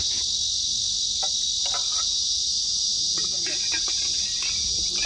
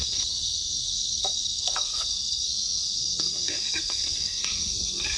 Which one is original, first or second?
first